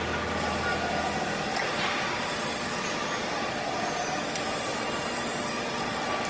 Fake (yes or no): no